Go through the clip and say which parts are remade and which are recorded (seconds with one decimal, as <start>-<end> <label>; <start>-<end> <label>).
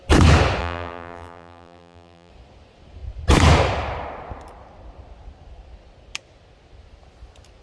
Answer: 0.0-0.6 recorded; 0.6-2.3 remade; 2.3-7.6 recorded